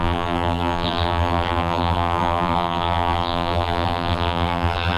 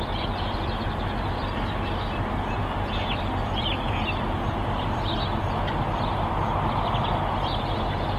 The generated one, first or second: first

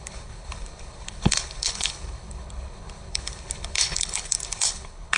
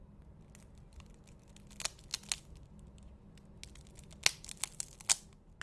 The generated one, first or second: first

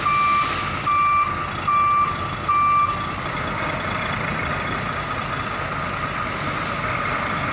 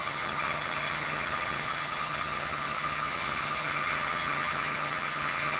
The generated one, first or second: second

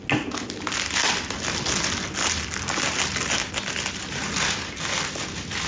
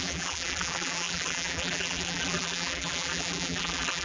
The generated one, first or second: second